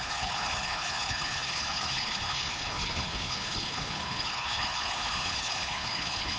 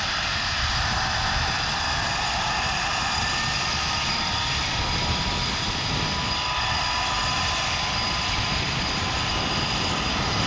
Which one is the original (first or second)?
second